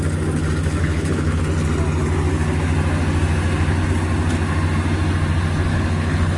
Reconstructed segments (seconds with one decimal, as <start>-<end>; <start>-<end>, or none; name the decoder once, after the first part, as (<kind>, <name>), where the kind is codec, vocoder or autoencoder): 0.8-1.4 (codec, HILCodec); 5.7-6.4